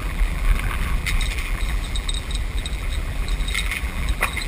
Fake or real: fake